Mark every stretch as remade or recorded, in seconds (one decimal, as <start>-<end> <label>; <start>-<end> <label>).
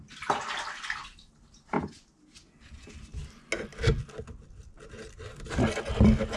0.0-6.4 recorded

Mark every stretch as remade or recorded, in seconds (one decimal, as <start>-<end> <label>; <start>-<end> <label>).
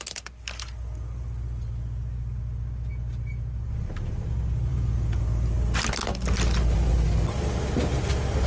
0.0-4.7 recorded; 4.7-5.2 remade; 5.2-8.5 recorded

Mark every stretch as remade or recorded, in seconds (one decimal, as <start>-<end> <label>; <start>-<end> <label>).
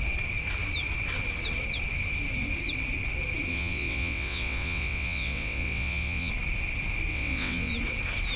0.0-3.5 recorded; 3.5-6.3 remade; 6.3-7.1 recorded; 7.1-7.7 remade; 7.7-8.4 recorded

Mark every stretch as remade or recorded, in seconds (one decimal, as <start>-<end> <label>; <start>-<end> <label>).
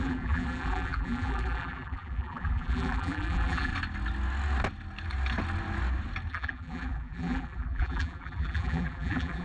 0.0-3.7 remade; 3.7-6.3 recorded; 6.3-9.4 remade